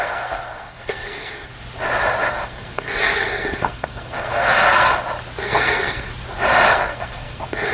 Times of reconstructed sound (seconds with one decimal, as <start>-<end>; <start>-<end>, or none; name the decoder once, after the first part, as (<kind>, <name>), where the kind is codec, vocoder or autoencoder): 0.0-1.5 (codec, SNAC); 2.3-4.9; 5.4-6.1; 6.7-7.7